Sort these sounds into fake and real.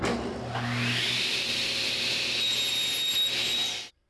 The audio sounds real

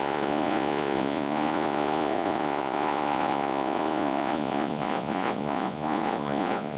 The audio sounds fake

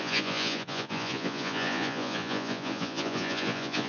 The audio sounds fake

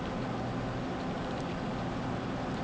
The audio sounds real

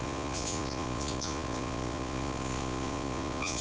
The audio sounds fake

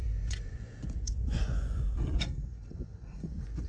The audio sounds fake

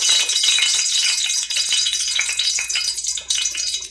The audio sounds fake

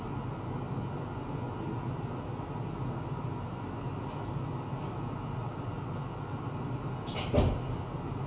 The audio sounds real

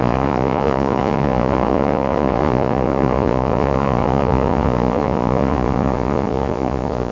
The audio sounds fake